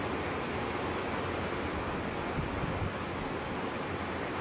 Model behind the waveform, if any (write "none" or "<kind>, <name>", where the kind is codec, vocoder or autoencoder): none